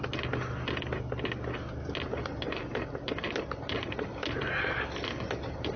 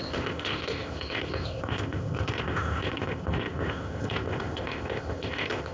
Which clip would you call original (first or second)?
first